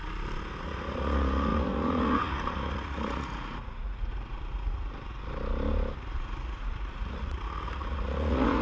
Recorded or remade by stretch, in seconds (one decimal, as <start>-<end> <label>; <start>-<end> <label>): 0.0-0.6 recorded; 0.6-5.1 remade; 5.1-6.0 recorded; 6.0-8.6 remade